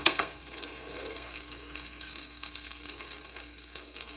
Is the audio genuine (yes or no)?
no